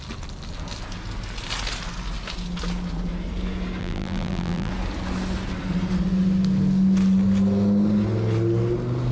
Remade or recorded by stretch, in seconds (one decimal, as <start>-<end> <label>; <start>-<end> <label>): 0.0-3.8 recorded; 3.8-4.7 remade; 4.7-9.1 recorded